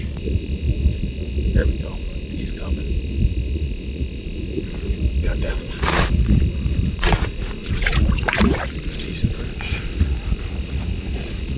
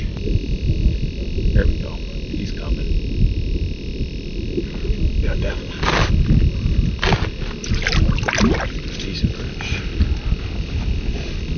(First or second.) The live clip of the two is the second